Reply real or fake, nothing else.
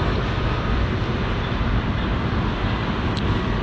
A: real